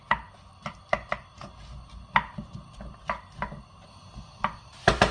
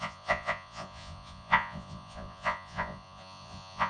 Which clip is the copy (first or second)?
second